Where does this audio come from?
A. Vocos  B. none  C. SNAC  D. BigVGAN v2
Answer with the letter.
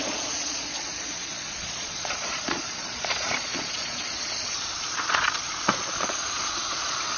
A